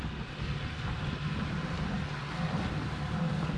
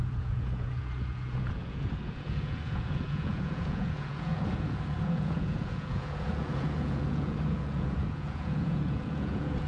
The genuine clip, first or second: first